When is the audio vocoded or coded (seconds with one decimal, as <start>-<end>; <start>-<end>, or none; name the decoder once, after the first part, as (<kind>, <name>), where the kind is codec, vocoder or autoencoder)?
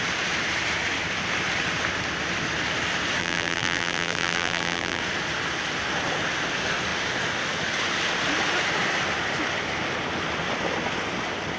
3.2-5.0 (vocoder, BigVGAN v2)